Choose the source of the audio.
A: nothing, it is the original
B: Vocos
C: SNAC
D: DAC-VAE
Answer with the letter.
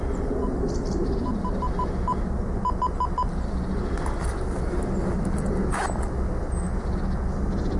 A